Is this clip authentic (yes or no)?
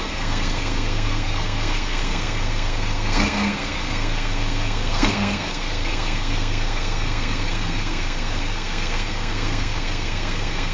no